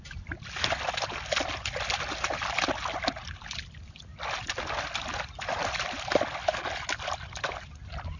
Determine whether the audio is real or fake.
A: real